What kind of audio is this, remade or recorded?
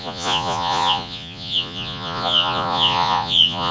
remade